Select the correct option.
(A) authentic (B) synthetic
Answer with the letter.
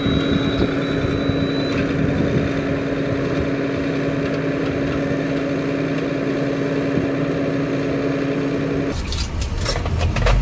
A